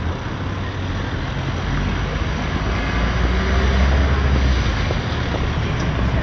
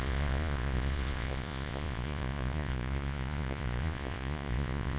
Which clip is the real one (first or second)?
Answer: first